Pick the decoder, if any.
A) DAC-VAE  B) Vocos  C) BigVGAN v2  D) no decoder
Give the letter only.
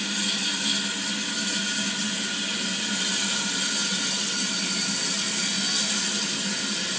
D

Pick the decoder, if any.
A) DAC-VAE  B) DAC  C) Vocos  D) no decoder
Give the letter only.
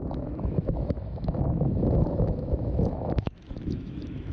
A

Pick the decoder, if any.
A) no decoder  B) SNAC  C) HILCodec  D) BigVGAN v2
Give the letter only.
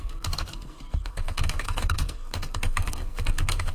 B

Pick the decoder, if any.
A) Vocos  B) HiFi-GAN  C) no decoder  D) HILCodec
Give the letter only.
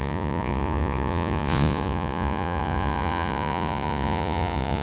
A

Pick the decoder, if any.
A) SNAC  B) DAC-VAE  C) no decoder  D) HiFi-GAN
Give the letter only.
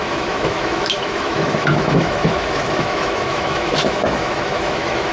B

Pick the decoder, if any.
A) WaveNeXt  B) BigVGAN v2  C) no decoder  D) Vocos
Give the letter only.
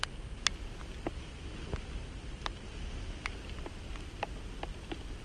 C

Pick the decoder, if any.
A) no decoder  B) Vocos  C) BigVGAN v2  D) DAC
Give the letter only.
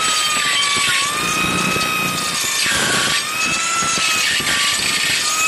A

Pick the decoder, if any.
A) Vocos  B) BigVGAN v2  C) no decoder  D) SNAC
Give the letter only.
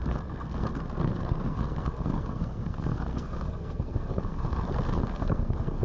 D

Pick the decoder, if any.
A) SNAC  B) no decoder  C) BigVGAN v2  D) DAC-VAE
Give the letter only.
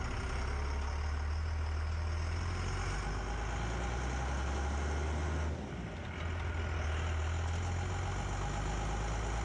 B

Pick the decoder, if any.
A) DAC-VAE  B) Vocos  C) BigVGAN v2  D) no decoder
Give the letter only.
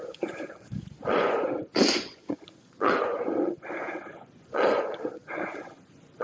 B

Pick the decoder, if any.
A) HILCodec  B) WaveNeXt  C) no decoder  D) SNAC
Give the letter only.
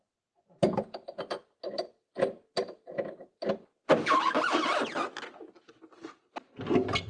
C